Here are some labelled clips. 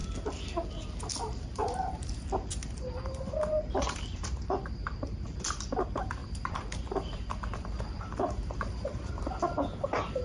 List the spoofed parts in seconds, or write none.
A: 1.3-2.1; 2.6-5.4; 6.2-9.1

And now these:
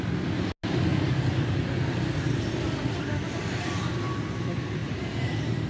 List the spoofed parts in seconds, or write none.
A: 4.8-5.7